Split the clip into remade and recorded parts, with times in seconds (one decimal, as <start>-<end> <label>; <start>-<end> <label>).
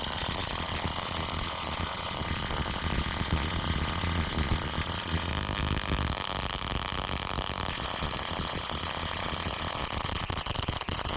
0.0-5.3 remade; 5.3-7.7 recorded; 7.7-11.2 remade